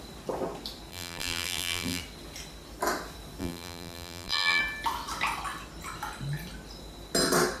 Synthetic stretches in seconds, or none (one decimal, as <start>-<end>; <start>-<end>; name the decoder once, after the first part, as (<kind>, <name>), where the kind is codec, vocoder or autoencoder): 0.9-2.0 (vocoder, BigVGAN v2); 3.4-4.6